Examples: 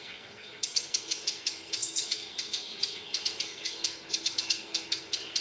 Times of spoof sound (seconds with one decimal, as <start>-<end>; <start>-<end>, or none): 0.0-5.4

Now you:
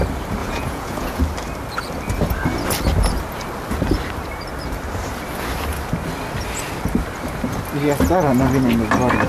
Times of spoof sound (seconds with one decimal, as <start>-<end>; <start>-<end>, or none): 0.4-1.2

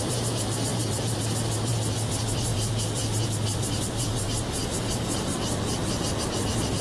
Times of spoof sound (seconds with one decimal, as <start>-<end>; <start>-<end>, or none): 0.0-5.3; 6.2-6.8

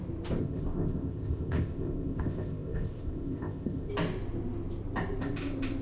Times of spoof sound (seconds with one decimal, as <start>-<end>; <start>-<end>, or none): 0.4-3.9